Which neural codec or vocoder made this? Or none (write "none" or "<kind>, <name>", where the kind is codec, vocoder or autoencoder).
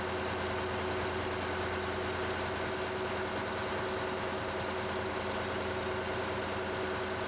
none